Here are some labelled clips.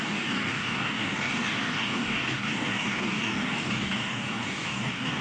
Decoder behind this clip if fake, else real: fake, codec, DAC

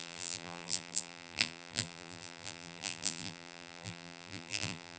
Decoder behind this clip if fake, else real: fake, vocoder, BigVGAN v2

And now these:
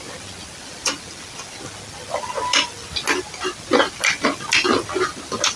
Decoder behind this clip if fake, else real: real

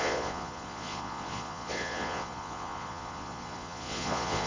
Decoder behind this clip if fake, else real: fake, vocoder, Vocos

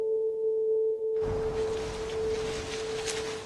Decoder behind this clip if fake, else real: real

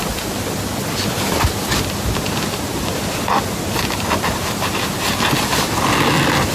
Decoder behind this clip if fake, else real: real